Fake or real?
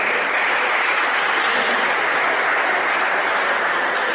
real